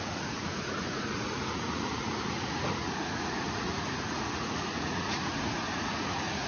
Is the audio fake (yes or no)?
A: yes